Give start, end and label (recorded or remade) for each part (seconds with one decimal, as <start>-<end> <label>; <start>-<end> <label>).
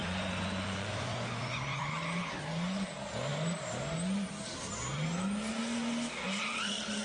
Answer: 0.0-1.8 remade; 1.8-7.0 recorded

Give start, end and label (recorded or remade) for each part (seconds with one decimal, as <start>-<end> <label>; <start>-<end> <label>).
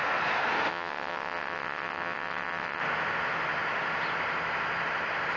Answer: 0.0-0.7 recorded; 0.7-2.8 remade; 2.8-5.4 recorded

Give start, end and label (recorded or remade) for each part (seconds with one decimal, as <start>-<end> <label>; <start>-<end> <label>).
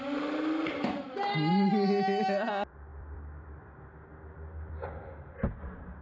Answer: 0.0-2.9 recorded; 2.9-4.7 remade; 4.7-6.0 recorded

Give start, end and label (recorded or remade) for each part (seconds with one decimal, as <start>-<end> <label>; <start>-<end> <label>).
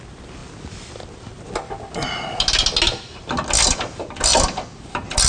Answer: 0.0-5.3 recorded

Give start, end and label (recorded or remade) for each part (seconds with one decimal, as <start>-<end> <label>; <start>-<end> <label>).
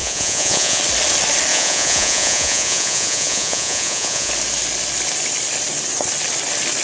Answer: 0.0-0.8 remade; 0.8-1.5 recorded; 1.5-4.3 remade; 4.3-6.8 recorded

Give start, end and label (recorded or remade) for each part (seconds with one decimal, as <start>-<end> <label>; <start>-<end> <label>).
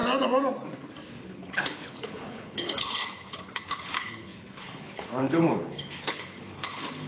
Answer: 0.0-1.2 recorded; 1.2-7.1 remade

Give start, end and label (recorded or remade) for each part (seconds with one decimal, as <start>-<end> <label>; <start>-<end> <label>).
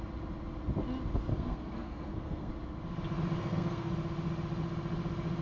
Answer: 0.0-1.3 recorded; 1.3-2.5 remade; 2.5-3.4 recorded; 3.4-3.9 remade; 3.9-5.4 recorded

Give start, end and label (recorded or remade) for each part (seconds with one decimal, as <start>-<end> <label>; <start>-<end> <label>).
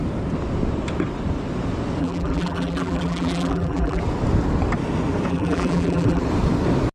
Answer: 0.0-2.0 recorded; 2.0-4.0 remade; 4.0-5.3 recorded; 5.3-6.2 remade; 6.2-6.9 recorded